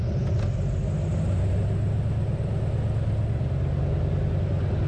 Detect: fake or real real